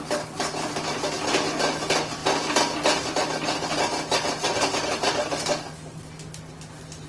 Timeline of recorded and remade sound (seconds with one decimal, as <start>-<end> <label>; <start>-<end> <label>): 0.0-7.1 recorded